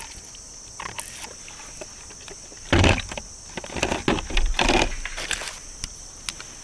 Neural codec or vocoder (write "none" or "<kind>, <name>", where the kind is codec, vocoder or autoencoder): none